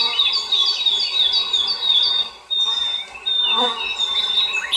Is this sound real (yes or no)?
yes